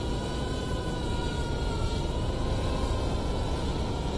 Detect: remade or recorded remade